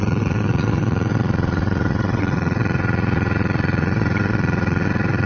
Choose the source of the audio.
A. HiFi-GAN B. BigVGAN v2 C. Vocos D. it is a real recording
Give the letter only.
C